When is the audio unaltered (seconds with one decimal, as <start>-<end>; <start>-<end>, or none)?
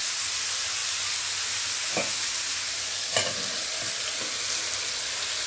0.0-5.5